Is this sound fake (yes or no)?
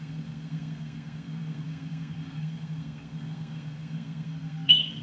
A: yes